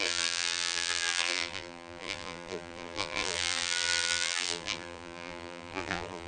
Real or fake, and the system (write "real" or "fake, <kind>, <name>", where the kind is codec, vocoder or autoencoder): fake, vocoder, BigVGAN v2